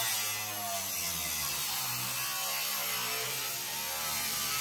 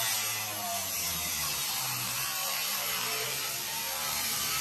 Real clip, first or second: first